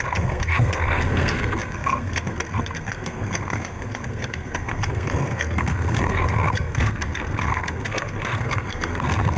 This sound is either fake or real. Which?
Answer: fake